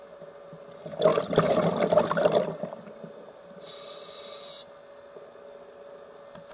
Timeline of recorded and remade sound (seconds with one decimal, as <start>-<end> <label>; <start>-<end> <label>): 0.0-6.5 recorded